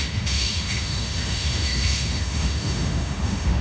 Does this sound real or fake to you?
fake